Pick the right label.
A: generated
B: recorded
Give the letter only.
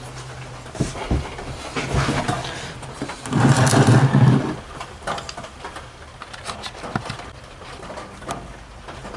B